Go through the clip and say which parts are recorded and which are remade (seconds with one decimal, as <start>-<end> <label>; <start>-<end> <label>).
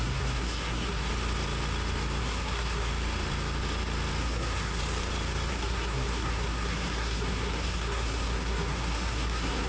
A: 0.0-1.1 remade; 1.1-2.2 recorded; 2.2-2.9 remade; 2.9-4.2 recorded; 4.2-4.8 remade; 4.8-5.5 recorded; 5.5-9.7 remade